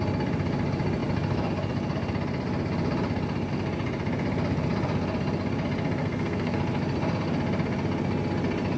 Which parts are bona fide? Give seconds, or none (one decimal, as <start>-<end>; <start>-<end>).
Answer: 0.0-6.0; 6.6-8.8